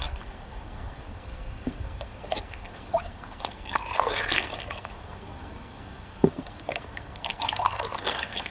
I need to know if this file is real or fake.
fake